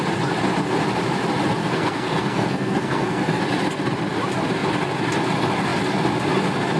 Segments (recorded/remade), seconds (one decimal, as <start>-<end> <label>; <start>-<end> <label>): 0.0-1.6 recorded; 1.6-3.4 remade; 3.4-6.8 recorded

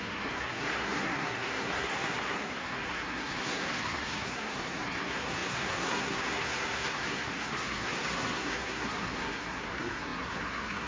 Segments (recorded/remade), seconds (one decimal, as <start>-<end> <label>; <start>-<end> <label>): 0.0-10.9 remade

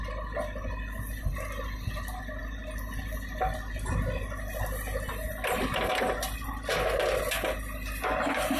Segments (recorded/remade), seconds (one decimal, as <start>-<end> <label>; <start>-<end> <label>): 0.0-8.6 recorded

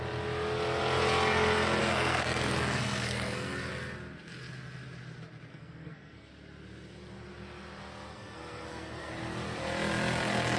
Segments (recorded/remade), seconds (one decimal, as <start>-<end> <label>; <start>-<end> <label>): 0.0-1.8 recorded; 1.8-3.7 remade; 3.7-5.5 recorded; 5.5-6.3 remade; 6.3-8.1 recorded; 8.1-9.1 remade; 9.1-10.6 recorded

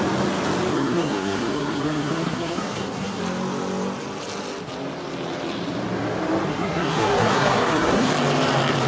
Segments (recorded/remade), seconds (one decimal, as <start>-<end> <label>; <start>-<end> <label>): 0.0-0.7 recorded; 0.7-3.2 remade; 3.2-6.5 recorded; 6.5-8.1 remade; 8.1-8.9 recorded

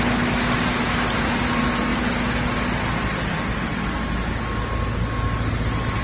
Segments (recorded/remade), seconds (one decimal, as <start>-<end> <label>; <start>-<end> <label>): 0.0-6.0 recorded

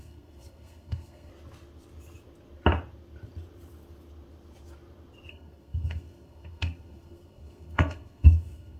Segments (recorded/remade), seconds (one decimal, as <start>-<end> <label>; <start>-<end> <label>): 0.0-1.3 remade; 1.3-5.3 recorded; 5.3-8.8 remade